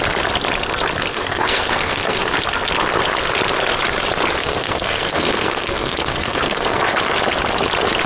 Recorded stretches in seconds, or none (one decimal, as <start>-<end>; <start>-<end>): 0.0-1.1; 2.2-4.4; 6.8-8.1